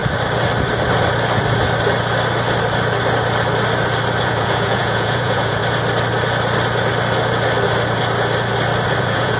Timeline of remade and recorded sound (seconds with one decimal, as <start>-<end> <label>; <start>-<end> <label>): 0.0-4.2 recorded; 4.2-5.6 remade; 5.6-9.0 recorded; 9.0-9.4 remade